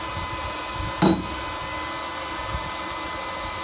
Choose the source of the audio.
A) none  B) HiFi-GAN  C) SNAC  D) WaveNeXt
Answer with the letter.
A